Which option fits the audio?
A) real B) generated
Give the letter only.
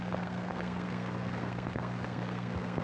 B